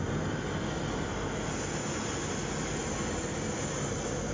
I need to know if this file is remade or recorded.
recorded